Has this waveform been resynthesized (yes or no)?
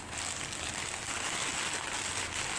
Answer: no